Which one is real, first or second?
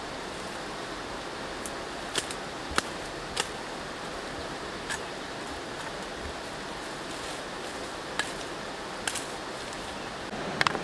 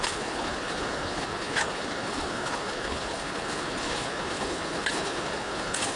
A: first